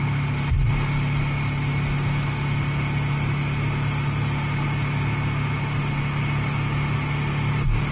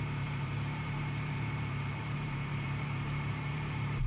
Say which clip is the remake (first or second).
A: second